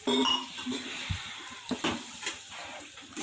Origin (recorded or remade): remade